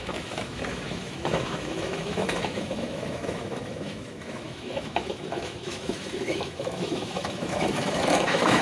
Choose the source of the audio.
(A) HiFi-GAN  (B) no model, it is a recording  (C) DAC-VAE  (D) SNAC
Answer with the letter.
C